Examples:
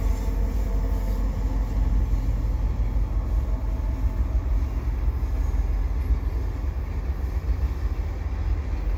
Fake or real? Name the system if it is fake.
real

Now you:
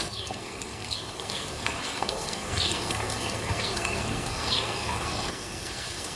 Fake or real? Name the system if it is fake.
fake, codec, SNAC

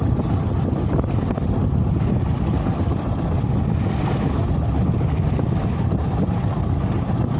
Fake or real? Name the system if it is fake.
real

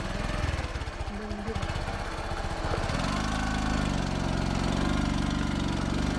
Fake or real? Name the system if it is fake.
real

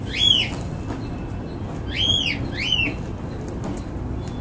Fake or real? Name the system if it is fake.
real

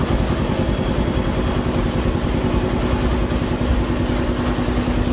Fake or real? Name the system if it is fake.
real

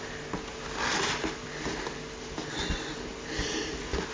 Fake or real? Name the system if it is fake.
real